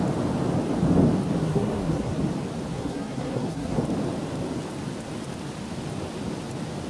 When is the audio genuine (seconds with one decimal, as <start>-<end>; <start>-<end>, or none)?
0.0-1.4; 2.1-2.7; 3.8-6.9